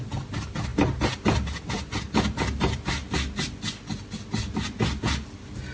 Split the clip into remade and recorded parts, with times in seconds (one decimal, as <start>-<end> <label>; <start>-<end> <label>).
0.0-5.7 recorded